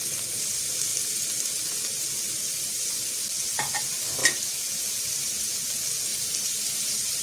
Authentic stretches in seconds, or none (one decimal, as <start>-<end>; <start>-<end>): 0.0-6.1

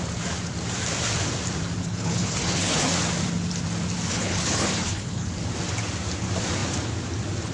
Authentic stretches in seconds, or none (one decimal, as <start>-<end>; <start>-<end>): 0.0-1.8; 2.9-4.1; 5.3-7.5

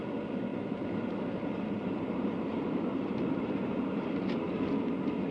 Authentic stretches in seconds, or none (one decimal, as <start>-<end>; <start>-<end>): 0.0-0.5; 3.7-5.3

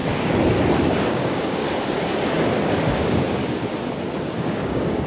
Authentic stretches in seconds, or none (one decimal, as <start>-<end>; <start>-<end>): 0.0-0.9; 1.6-3.0; 3.4-4.2

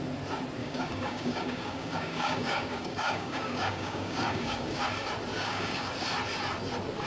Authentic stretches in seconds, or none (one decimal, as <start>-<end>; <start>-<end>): 0.0-0.6; 4.8-5.3; 5.9-7.1

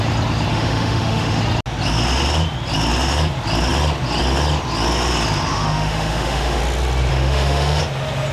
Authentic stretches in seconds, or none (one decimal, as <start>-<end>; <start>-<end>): 0.0-0.5; 1.4-5.5; 6.6-7.1; 7.8-8.3

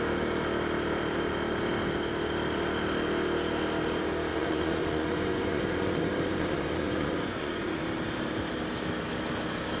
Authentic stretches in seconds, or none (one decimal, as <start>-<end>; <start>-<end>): 0.0-4.3; 7.8-9.8

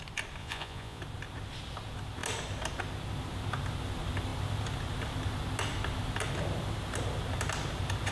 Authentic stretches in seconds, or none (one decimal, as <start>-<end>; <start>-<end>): 0.0-0.4; 1.0-8.1